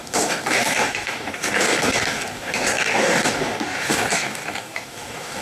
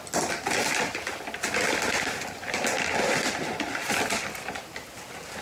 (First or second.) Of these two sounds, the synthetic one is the first